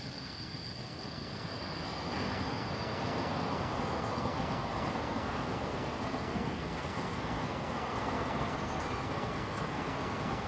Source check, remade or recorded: remade